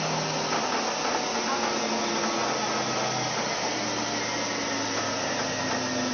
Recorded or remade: recorded